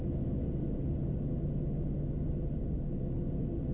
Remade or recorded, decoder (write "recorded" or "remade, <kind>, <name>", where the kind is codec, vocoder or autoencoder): recorded